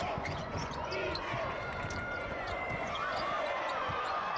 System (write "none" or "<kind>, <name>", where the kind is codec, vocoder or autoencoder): vocoder, Vocos